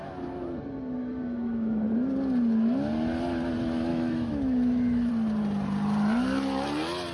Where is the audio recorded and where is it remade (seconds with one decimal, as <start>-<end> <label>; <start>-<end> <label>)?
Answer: 0.0-1.0 recorded; 1.0-1.9 remade; 1.9-3.9 recorded; 3.9-5.1 remade; 5.1-7.1 recorded